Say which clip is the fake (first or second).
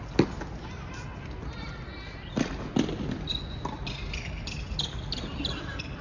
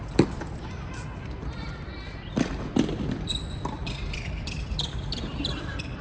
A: second